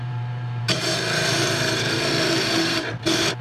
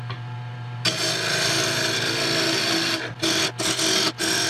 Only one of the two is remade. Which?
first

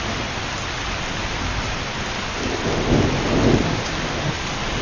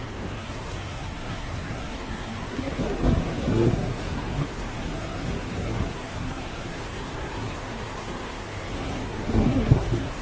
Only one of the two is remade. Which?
second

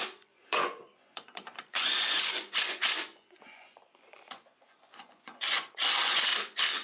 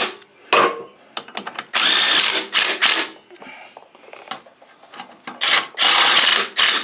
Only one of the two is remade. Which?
first